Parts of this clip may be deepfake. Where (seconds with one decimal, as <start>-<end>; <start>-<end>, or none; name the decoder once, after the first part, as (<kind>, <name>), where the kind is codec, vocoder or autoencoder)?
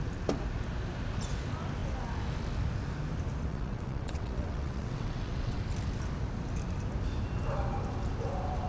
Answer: 3.5-5.6 (vocoder, WaveNeXt)